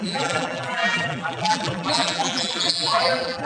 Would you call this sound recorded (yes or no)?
no